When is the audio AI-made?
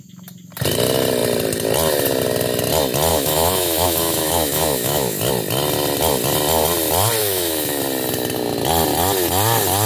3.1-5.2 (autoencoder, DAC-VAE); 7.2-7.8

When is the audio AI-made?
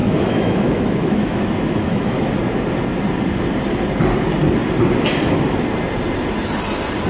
0.0-2.3 (autoencoder, DAC-VAE)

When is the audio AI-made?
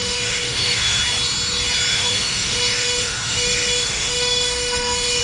0.0-1.0 (autoencoder, DAC-VAE); 1.9-5.2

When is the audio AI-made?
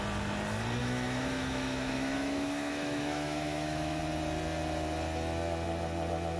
0.8-4.0 (autoencoder, DAC-VAE)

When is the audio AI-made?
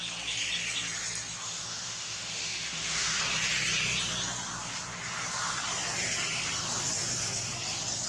1.4-3.2 (autoencoder, DAC-VAE)